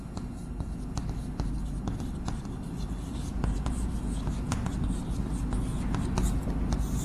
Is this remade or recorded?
recorded